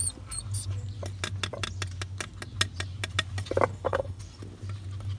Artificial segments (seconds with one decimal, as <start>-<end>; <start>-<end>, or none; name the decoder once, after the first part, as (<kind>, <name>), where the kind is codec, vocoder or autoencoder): 3.7-4.2 (codec, HILCodec)